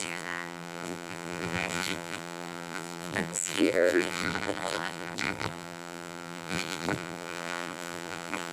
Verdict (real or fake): fake